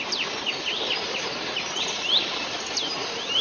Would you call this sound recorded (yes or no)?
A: yes